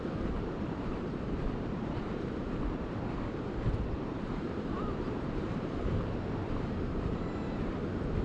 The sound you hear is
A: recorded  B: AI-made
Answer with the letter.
B